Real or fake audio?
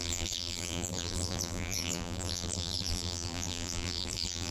fake